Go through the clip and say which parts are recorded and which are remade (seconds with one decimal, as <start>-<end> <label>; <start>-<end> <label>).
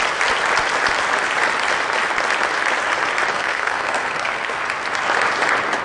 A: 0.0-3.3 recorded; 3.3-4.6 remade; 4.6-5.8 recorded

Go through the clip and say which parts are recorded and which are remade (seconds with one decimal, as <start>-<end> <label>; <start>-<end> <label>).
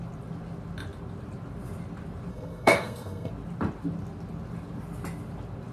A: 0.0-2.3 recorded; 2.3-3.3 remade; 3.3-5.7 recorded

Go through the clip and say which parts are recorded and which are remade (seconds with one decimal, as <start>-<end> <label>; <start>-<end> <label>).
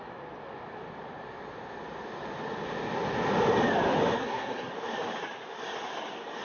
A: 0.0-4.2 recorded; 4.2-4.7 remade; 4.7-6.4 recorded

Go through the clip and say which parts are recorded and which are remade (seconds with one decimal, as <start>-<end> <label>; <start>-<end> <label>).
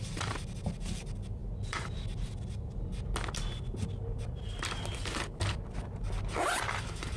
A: 0.0-7.2 recorded